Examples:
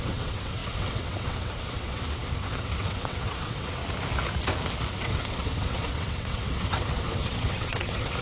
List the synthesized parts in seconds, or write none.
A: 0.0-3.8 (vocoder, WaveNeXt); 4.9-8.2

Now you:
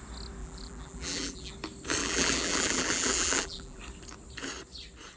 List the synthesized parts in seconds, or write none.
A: 0.4-1.5 (vocoder, BigVGAN v2); 2.0-3.8

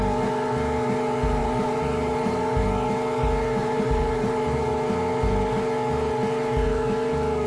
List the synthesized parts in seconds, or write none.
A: 1.4-2.4 (vocoder, BigVGAN v2); 3.6-4.7

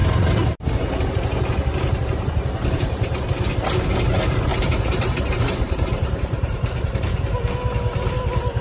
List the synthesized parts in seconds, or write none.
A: 0.0-3.5 (vocoder, BigVGAN v2); 4.5-7.0

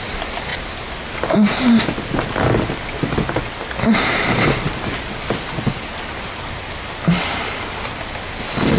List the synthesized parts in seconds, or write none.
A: none

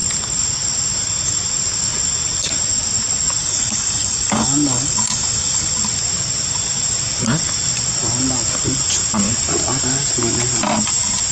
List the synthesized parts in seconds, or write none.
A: 3.4-5.7 (codec, DAC)

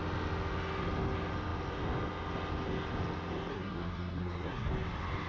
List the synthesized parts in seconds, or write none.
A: 3.5-4.7 (codec, SNAC)